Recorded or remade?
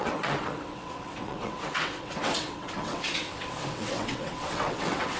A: remade